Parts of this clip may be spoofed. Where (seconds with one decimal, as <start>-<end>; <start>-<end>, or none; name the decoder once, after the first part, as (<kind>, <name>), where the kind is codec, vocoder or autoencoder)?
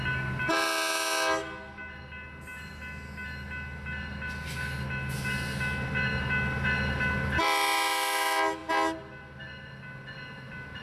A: none